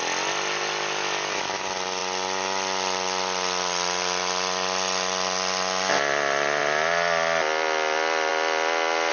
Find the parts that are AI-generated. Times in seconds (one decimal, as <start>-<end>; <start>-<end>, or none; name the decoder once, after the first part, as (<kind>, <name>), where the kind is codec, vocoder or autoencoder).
none